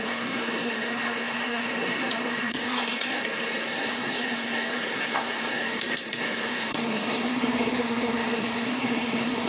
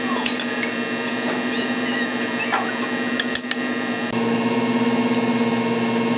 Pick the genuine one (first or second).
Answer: second